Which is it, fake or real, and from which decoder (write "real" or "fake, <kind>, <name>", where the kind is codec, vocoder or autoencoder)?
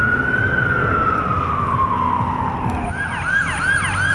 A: real